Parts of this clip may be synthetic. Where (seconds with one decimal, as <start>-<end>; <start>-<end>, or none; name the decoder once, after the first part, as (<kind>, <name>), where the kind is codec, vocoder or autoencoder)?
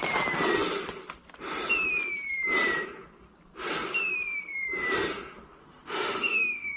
5.6-6.8 (autoencoder, DAC-VAE)